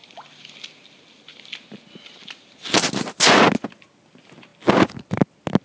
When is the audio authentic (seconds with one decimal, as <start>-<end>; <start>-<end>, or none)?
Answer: 0.0-5.6